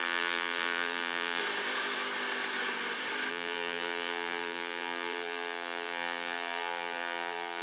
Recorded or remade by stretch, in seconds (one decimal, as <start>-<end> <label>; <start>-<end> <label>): 0.0-1.4 remade; 1.4-3.3 recorded; 3.3-7.6 remade